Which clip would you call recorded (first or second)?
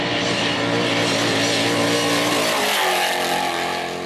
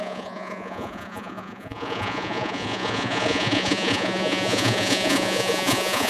first